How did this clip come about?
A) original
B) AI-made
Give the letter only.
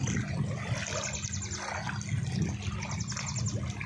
A